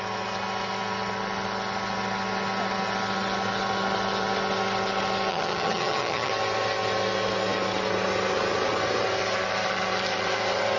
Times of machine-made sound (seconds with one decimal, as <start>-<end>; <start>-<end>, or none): 5.3-6.3